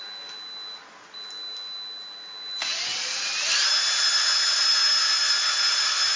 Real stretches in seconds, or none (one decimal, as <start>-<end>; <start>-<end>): 0.0-6.2